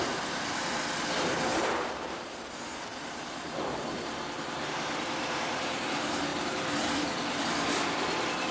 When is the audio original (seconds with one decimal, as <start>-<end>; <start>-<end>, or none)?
0.0-1.5; 2.3-2.9; 5.8-6.3; 7.4-8.5